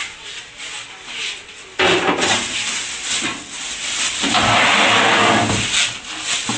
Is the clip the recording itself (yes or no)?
yes